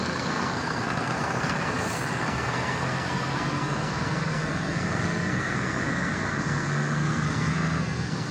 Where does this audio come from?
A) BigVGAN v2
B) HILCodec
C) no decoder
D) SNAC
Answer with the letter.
D